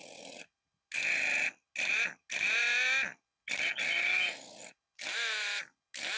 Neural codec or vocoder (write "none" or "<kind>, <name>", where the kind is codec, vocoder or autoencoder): none